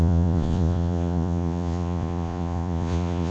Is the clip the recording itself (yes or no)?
no